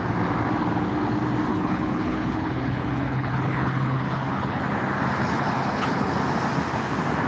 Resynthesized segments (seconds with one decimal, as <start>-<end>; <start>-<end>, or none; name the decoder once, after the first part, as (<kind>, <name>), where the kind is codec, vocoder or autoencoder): 1.5-4.6 (codec, HILCodec); 5.2-6.1